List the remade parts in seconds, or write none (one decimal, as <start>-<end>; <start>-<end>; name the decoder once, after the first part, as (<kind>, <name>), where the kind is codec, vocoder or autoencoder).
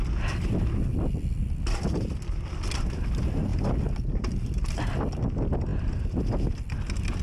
none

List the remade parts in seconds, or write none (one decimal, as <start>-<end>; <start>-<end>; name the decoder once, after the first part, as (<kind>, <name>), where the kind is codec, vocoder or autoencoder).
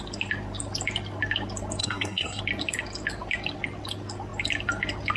1.8-2.4 (codec, SNAC)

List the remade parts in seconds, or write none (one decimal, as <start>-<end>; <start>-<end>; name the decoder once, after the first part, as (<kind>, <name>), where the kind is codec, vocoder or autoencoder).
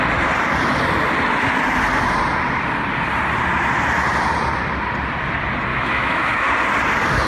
5.7-6.5 (autoencoder, DAC-VAE)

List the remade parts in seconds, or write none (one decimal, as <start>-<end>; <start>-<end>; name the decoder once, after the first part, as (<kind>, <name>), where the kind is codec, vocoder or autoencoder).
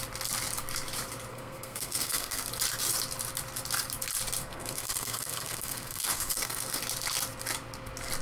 1.3-2.4 (codec, SNAC); 4.4-6.8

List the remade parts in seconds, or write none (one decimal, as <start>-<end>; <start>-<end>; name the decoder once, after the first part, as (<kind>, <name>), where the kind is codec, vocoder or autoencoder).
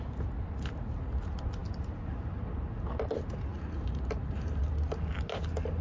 3.5-4.6 (vocoder, BigVGAN v2)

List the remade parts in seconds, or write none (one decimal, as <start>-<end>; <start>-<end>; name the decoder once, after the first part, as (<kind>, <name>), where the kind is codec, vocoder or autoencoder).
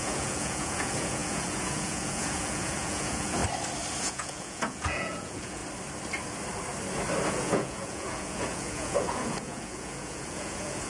0.0-3.4 (vocoder, Vocos); 4.0-5.6; 7.3-10.9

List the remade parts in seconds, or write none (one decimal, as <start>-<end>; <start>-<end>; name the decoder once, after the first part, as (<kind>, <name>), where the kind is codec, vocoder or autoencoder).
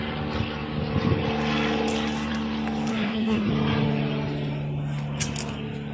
2.9-3.5 (codec, SNAC)